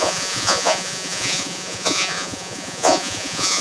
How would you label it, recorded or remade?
remade